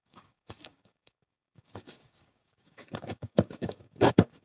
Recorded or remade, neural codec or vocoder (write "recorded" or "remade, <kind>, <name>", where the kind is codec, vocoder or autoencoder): remade, codec, DAC